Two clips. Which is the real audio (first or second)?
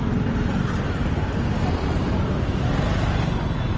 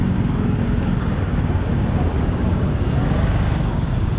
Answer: first